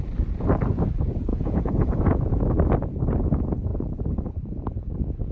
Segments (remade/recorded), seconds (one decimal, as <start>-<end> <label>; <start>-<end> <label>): 0.0-1.3 recorded; 1.3-2.4 remade; 2.4-5.3 recorded